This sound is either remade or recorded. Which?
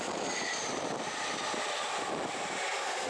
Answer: recorded